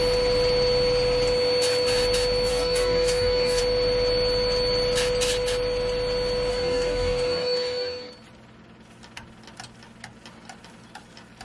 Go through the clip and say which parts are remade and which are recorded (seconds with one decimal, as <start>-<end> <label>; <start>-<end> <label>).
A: 0.0-2.5 recorded; 2.5-3.6 remade; 3.6-6.5 recorded; 6.5-8.1 remade; 8.1-11.4 recorded